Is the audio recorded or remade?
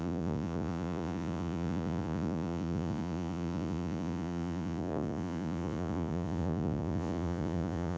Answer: remade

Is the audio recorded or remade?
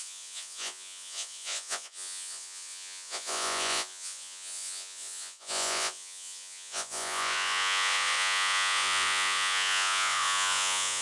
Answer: remade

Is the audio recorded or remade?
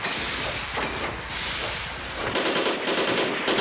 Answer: recorded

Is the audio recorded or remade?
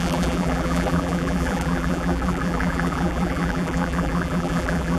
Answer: remade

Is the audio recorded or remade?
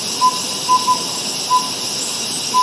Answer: recorded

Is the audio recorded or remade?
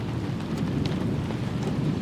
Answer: recorded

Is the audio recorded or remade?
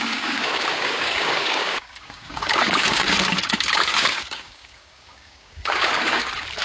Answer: remade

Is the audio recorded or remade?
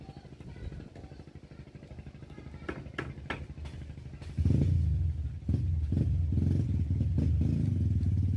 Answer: recorded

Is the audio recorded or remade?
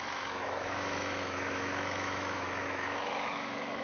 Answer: remade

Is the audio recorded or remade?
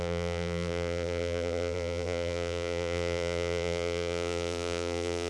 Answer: remade